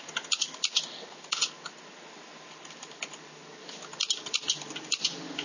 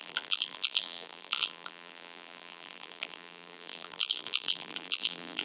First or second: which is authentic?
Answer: first